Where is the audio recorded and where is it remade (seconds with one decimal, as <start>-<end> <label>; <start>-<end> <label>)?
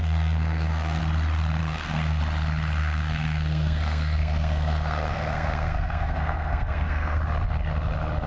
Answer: 0.0-1.0 remade; 1.0-1.6 recorded; 1.6-2.2 remade; 2.2-2.8 recorded; 2.8-7.2 remade; 7.2-8.3 recorded